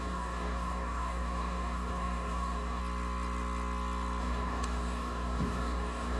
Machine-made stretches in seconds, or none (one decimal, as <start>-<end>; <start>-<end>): 0.0-2.8; 4.2-6.2